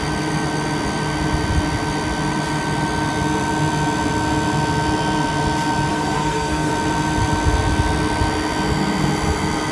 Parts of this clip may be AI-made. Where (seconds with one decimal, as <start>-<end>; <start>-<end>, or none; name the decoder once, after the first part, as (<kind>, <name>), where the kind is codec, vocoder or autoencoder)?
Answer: 5.9-6.7 (codec, SNAC)